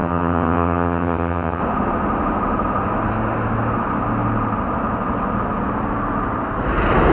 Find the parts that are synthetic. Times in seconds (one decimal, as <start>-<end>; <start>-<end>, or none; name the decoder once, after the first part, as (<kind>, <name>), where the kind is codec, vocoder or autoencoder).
0.0-1.6 (vocoder, HiFi-GAN)